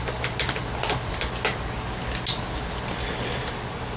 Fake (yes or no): no